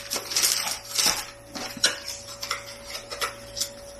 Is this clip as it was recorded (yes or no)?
yes